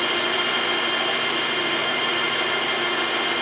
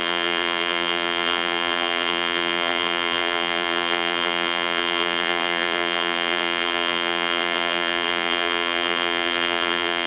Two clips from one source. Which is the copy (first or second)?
second